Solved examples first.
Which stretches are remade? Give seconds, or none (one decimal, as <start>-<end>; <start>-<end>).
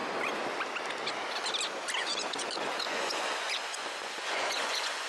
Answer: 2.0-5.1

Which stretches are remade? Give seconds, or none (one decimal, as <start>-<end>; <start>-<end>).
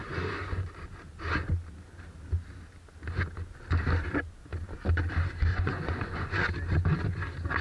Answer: 0.0-0.7; 5.5-6.5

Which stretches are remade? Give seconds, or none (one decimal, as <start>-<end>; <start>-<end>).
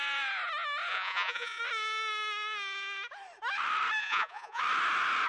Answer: 0.9-1.6; 4.0-4.6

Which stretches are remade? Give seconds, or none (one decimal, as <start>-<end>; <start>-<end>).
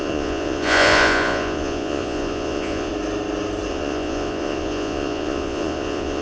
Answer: 0.0-2.9; 3.7-6.2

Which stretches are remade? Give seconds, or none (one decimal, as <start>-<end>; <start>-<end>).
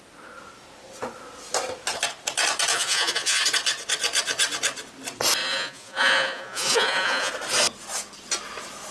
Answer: 2.7-3.4; 5.4-7.3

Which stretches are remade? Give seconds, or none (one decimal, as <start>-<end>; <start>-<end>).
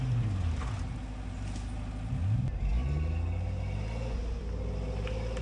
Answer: none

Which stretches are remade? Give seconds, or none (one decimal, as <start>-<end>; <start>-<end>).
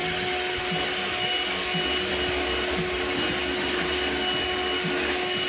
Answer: none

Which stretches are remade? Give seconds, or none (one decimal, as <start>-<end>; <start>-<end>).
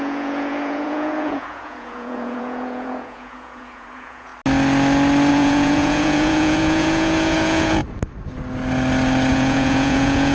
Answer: 0.0-4.3; 5.3-7.8; 9.3-10.3